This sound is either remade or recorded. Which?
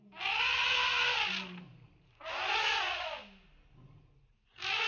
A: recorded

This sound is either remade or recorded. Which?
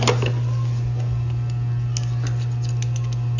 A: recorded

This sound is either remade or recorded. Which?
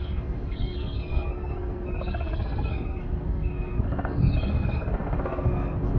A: remade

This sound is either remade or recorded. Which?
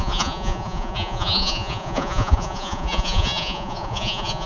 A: remade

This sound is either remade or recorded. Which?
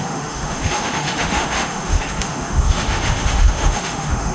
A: remade